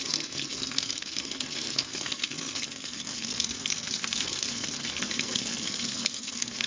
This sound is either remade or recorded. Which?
remade